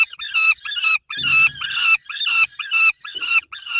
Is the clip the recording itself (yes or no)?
yes